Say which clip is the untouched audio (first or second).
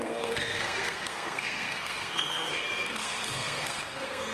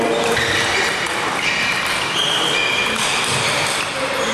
second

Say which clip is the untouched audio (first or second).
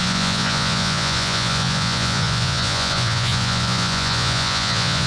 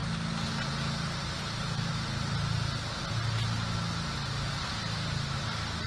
second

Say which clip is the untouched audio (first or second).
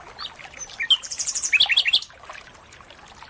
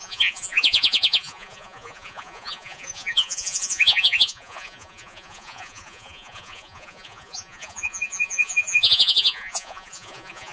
first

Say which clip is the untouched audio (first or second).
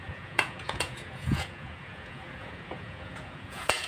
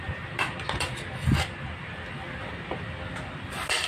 second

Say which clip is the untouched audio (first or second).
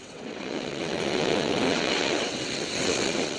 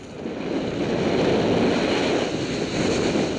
second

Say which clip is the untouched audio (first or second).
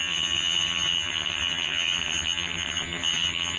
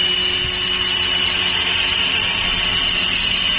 second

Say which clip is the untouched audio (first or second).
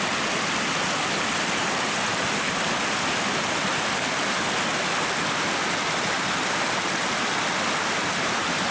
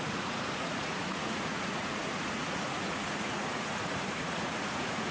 first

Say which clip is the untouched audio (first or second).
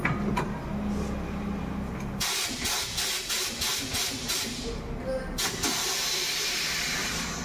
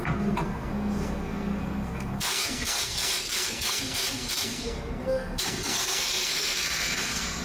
first